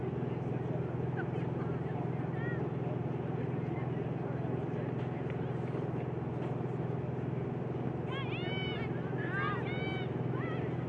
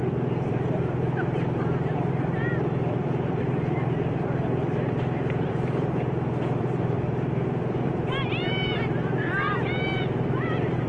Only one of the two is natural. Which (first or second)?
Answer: first